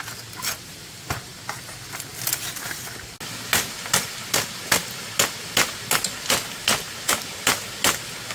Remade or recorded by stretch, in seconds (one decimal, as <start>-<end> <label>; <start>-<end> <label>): 0.0-8.3 recorded